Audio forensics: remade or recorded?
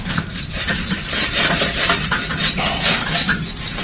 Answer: recorded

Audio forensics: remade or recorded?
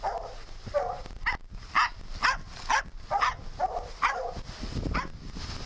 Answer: recorded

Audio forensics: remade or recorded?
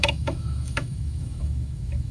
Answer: remade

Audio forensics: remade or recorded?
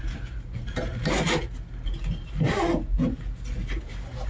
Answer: recorded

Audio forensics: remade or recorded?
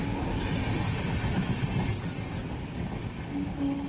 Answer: recorded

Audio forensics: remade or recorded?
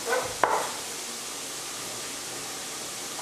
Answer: recorded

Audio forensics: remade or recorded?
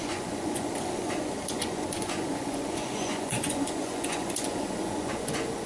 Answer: remade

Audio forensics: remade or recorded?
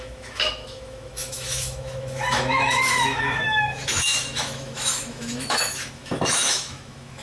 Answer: remade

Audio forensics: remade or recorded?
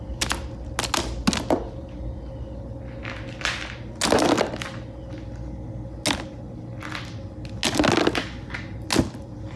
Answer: recorded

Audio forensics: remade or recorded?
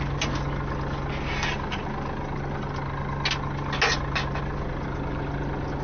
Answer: recorded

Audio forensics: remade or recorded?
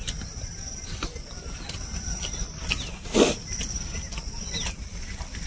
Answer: recorded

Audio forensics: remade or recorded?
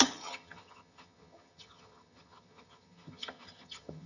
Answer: remade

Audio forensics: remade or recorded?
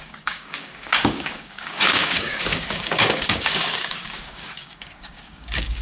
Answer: remade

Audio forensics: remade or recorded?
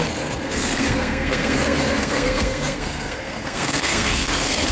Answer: remade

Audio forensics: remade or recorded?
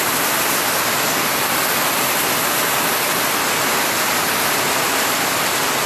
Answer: recorded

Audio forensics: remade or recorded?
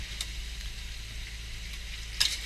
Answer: recorded